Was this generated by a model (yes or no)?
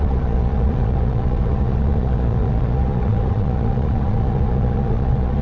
yes